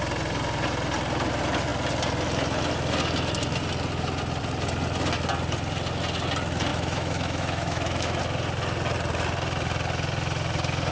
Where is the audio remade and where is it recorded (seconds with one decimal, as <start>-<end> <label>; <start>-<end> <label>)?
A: 0.0-6.7 recorded; 6.7-8.2 remade; 8.2-10.9 recorded